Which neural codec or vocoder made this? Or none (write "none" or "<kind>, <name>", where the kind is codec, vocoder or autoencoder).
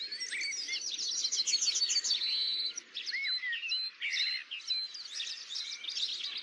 none